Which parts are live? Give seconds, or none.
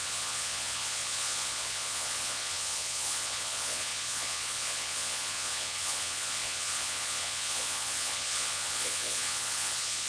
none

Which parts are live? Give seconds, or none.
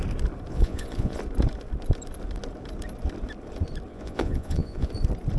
0.0-0.5; 1.2-3.9; 4.9-5.4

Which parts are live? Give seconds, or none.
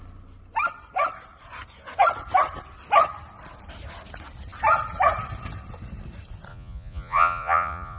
0.0-6.5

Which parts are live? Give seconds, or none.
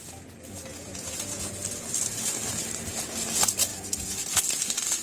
0.0-0.7; 1.5-3.7; 4.4-5.0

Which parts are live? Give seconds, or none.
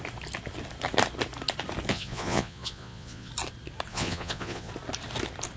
0.0-1.9; 3.3-3.9; 4.7-5.6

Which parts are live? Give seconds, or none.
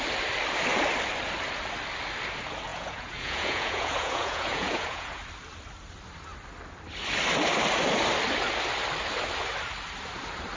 0.0-2.7; 5.2-10.6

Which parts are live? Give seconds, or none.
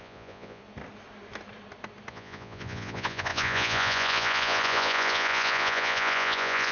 0.6-2.1